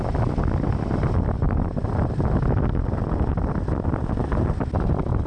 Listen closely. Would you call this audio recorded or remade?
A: recorded